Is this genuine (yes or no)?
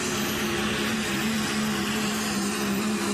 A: yes